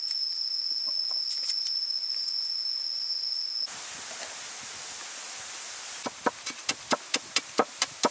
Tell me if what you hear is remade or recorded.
recorded